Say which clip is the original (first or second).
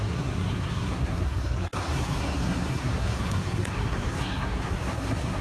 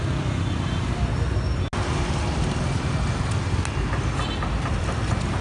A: second